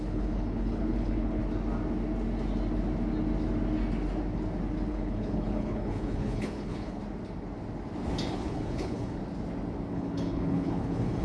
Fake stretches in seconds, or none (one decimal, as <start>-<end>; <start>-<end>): 0.0-1.4; 4.9-7.0; 8.3-9.2; 9.9-11.2